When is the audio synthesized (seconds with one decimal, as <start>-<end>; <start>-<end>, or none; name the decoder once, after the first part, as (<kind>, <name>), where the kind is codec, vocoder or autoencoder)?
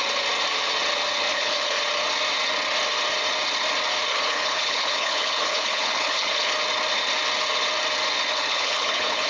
1.3-1.8 (codec, HILCodec); 4.1-6.5; 8.3-9.3